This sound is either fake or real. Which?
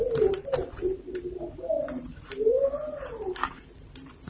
fake